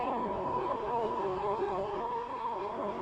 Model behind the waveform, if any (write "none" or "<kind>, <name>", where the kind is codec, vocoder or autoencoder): codec, SNAC